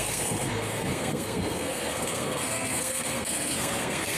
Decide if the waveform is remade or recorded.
remade